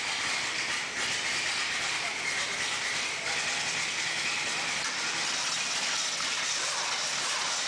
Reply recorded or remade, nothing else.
recorded